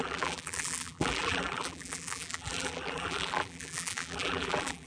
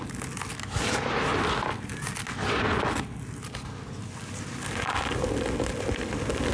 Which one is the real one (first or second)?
second